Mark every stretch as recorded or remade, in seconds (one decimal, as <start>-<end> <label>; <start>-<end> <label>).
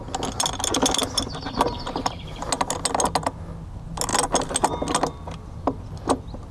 0.0-1.7 recorded; 1.7-2.4 remade; 2.4-6.5 recorded